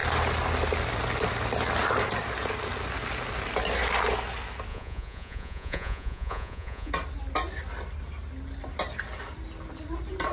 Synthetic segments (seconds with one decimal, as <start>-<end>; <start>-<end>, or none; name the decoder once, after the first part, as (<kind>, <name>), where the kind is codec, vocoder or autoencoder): 4.7-6.9 (vocoder, Vocos)